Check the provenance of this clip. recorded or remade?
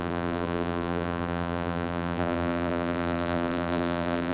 remade